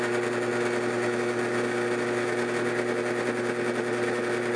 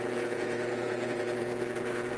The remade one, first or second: second